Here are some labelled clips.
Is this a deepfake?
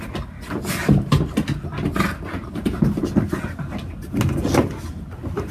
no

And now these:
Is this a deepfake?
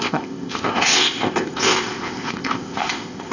yes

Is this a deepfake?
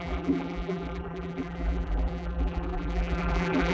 yes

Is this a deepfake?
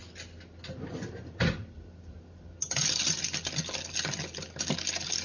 no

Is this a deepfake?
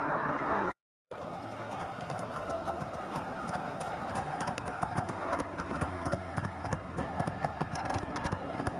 yes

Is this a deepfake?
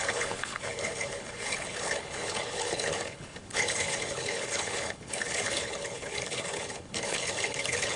yes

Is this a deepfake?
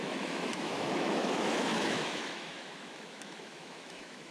yes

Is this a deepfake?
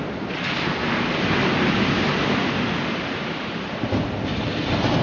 no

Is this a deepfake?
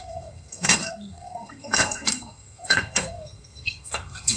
yes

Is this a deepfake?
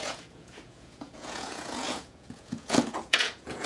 yes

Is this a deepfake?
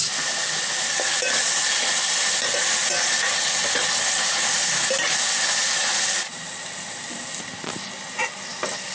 no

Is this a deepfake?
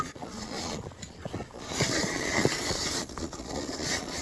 yes